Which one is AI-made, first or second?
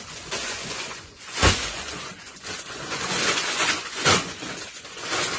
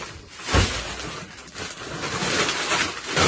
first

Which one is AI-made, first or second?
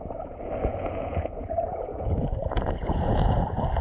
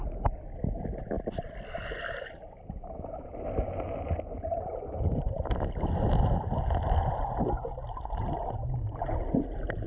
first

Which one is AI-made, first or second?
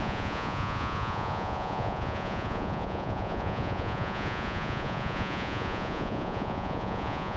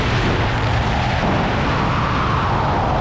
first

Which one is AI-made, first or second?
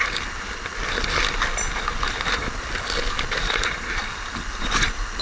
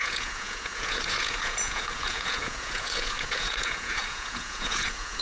second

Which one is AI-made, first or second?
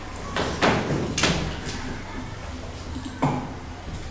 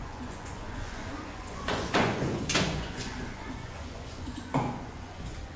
second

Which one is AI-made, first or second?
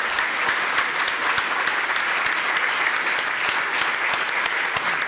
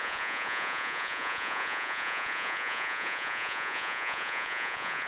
second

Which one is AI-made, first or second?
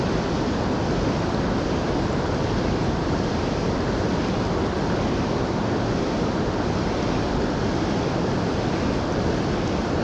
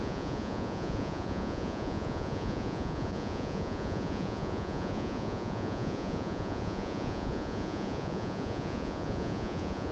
second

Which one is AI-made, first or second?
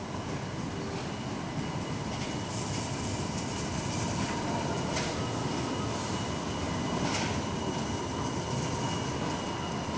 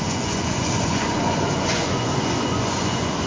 second